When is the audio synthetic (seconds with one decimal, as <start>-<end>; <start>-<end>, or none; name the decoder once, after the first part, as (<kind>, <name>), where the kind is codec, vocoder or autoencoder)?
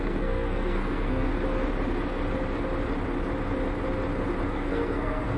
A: 0.0-1.3 (codec, SNAC); 4.5-5.4